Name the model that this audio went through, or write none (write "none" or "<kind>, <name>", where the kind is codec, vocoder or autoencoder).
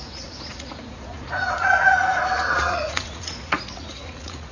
vocoder, Vocos